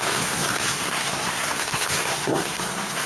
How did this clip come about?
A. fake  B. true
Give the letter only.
A